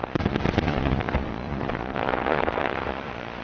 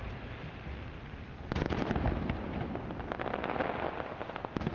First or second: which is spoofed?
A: first